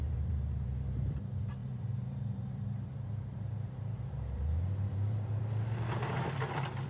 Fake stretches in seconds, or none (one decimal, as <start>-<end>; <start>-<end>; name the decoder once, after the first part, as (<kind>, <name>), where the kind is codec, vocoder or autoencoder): 0.0-1.1 (vocoder, BigVGAN v2); 1.6-5.4